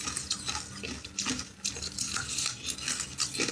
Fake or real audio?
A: real